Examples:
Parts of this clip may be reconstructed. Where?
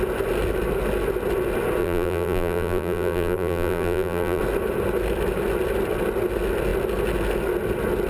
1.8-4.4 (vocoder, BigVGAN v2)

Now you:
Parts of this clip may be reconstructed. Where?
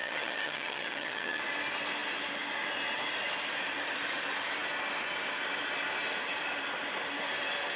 0.0-1.4 (vocoder, HiFi-GAN)